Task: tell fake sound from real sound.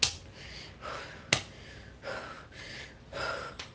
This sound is real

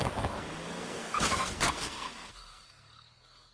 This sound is fake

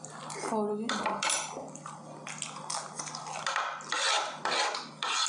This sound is real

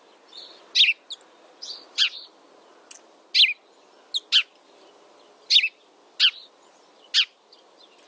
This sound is real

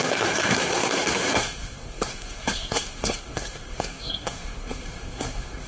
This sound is fake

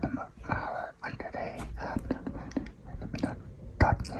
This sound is real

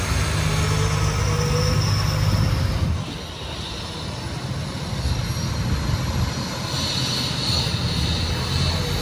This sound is real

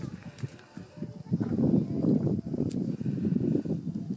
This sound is real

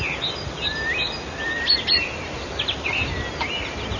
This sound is real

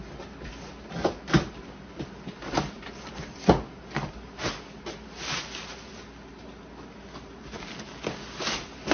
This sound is real